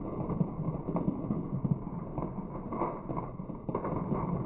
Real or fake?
real